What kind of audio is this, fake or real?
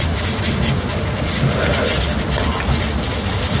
real